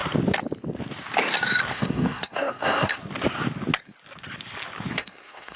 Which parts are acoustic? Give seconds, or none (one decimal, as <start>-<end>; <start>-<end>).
0.0-1.7; 3.0-4.9